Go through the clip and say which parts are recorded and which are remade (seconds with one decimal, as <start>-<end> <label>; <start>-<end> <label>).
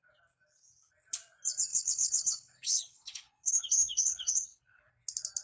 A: 0.0-1.7 recorded; 1.7-4.9 remade; 4.9-5.4 recorded